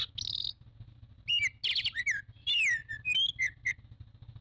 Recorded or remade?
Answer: recorded